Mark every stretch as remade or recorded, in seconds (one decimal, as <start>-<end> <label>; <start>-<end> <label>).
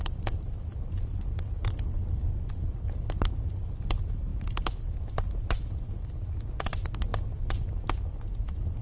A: 0.0-8.8 recorded